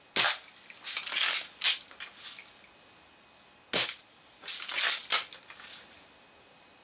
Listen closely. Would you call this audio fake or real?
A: real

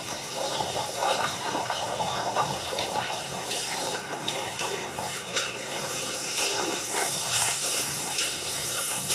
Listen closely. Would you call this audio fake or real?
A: fake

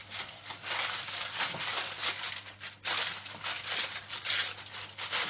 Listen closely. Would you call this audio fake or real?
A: real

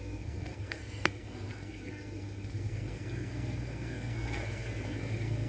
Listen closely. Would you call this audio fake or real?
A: fake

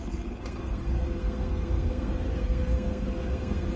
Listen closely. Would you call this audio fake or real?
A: fake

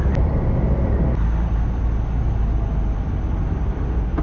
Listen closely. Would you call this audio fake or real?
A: real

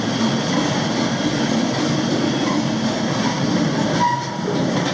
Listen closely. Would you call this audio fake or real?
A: real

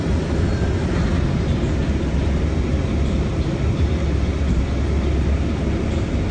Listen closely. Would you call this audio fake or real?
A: real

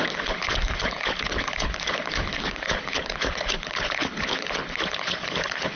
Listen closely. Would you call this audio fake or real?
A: fake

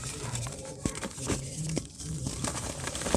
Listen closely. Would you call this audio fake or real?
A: fake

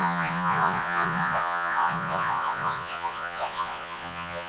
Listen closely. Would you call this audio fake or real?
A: fake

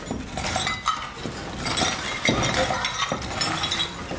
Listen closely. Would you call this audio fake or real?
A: real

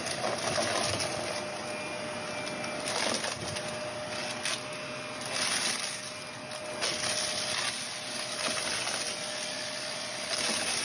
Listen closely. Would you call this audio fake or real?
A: real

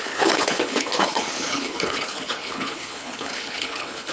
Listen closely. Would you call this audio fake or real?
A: fake